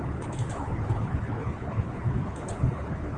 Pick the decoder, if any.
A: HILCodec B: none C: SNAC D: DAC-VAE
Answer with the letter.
A